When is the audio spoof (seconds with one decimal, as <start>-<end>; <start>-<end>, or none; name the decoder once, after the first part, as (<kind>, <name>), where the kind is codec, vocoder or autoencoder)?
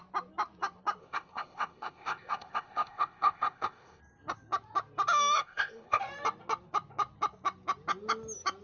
1.0-4.0 (codec, ZipCodec); 5.4-6.0